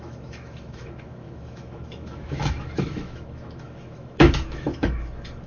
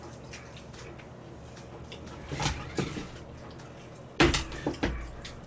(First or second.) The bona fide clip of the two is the second